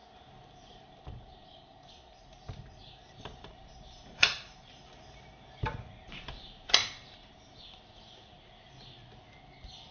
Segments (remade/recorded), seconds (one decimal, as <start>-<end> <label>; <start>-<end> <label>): 0.0-2.8 recorded; 2.8-7.8 remade; 7.8-9.9 recorded